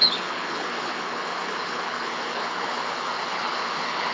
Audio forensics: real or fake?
fake